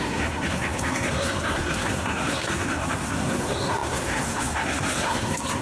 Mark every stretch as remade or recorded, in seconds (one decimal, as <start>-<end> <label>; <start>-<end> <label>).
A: 0.0-5.6 remade